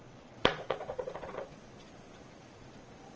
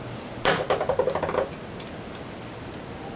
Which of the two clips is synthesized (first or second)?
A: first